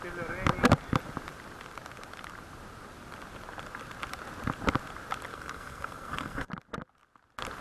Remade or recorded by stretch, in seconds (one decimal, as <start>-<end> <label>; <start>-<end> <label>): 0.0-5.3 recorded; 5.3-6.5 remade; 6.5-7.6 recorded